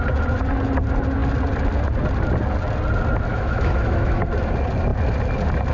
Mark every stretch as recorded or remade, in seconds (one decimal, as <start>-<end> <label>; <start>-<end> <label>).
0.0-3.3 recorded; 3.3-4.2 remade; 4.2-5.7 recorded